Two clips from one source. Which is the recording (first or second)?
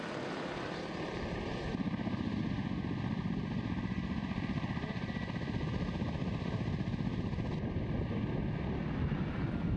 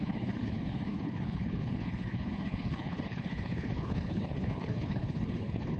first